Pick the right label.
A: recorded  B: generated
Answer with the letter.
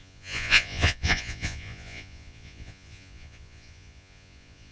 B